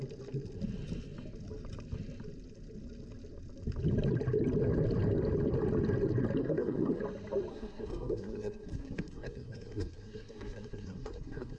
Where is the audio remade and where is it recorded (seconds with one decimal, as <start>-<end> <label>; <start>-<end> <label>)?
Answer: 0.0-6.4 recorded; 6.4-7.0 remade; 7.0-7.5 recorded; 7.5-11.6 remade

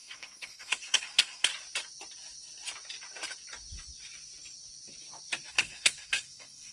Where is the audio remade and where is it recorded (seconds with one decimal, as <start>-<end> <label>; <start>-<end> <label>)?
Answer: 0.0-1.5 remade; 1.5-5.5 recorded; 5.5-6.7 remade